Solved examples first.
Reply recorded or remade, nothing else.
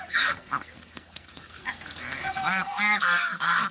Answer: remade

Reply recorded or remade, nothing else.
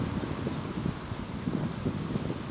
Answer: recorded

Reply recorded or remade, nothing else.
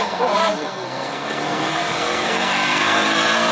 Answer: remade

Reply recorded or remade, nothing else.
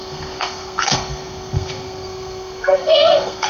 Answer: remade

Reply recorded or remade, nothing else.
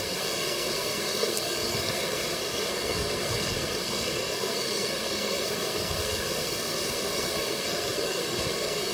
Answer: remade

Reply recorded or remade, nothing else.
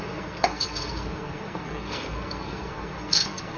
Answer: remade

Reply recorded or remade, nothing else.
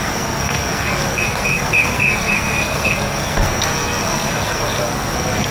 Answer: remade